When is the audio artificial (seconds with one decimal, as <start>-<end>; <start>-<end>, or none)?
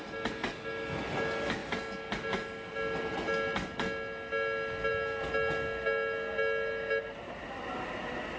none